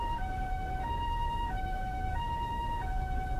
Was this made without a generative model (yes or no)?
no